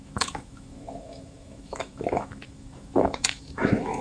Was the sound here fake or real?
fake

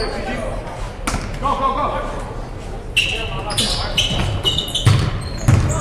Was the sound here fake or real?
real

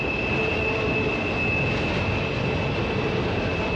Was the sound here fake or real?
real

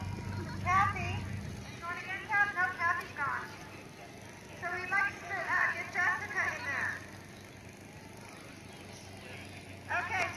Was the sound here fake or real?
real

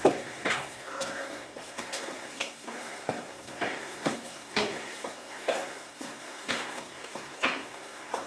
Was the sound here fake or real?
fake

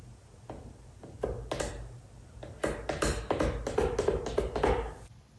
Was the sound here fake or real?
real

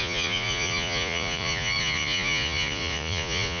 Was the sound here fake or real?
fake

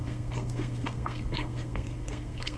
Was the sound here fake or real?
fake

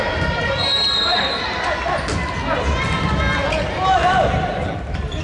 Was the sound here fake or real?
real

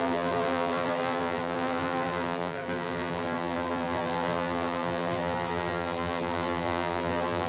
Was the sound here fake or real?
fake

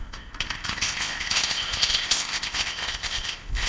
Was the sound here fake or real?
fake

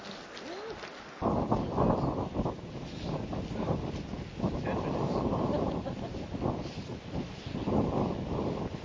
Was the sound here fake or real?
real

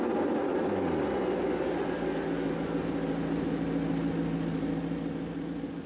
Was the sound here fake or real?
real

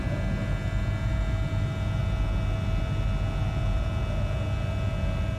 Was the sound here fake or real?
real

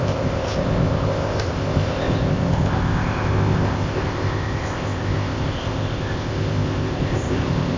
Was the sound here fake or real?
fake